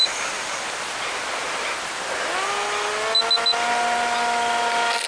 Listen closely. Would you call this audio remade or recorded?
recorded